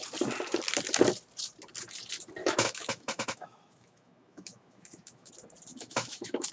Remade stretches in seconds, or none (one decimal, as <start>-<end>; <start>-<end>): 2.4-5.3; 5.7-6.5